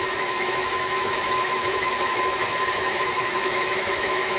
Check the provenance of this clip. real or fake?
fake